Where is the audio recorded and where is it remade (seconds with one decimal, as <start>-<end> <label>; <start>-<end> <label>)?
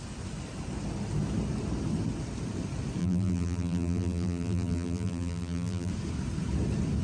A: 0.0-3.0 recorded; 3.0-5.9 remade; 5.9-7.0 recorded